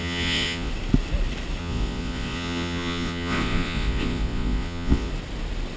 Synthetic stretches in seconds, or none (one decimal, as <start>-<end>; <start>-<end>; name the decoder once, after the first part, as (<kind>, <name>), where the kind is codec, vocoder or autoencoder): 0.0-0.7 (vocoder, Vocos); 1.6-5.1